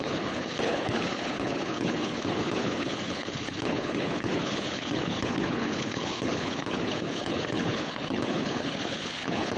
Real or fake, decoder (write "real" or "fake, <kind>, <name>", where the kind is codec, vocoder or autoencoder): fake, codec, HILCodec